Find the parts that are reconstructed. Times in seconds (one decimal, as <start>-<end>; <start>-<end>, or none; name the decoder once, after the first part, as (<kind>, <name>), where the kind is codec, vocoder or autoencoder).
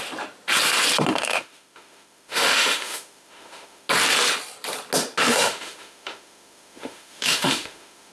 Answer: 1.1-3.9 (autoencoder, DAC-VAE); 5.3-8.1